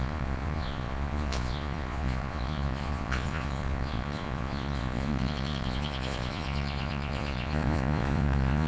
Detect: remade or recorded remade